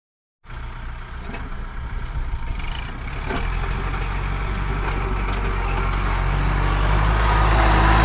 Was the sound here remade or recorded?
recorded